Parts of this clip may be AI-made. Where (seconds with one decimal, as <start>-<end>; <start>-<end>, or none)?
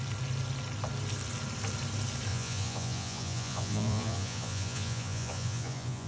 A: 2.3-6.1